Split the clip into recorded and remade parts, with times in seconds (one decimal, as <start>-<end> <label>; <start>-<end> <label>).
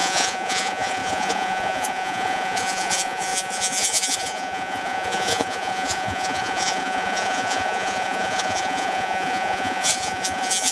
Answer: 0.0-10.7 remade